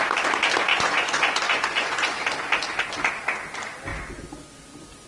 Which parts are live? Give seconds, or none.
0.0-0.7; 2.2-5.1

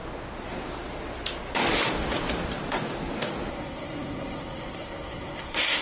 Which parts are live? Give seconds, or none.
0.0-3.5

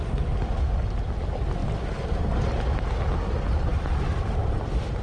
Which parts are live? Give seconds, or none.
0.0-5.0

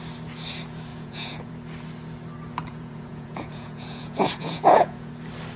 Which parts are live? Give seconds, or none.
0.0-0.9; 1.5-2.7; 5.1-5.6

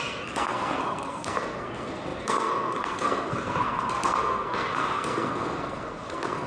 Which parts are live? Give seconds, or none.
none

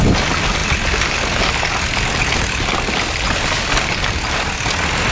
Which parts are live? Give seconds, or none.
0.0-5.1

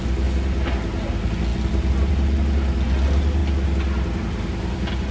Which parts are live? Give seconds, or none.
0.0-5.1